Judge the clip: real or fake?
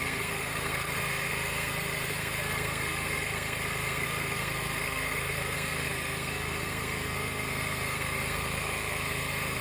fake